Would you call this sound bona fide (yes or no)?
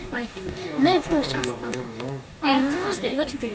no